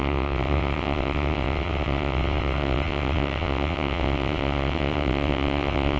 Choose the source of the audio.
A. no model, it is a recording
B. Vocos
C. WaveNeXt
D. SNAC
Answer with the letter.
C